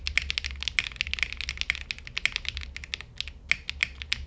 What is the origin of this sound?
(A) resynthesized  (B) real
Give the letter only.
B